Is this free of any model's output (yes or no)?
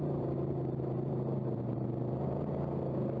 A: no